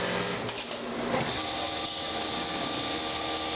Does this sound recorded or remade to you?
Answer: recorded